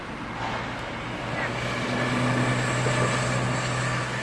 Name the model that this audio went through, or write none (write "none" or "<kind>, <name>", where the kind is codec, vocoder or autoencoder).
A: none